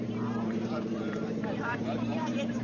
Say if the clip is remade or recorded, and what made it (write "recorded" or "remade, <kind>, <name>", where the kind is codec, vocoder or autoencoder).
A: remade, vocoder, BigVGAN v2